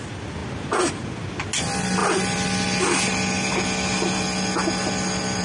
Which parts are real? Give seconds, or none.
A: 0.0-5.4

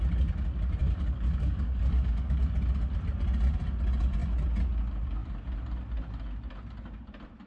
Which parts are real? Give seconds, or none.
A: 0.0-0.8; 2.4-7.5